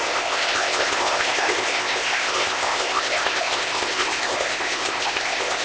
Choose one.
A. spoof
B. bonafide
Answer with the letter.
A